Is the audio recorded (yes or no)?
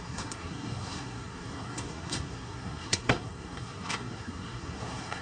no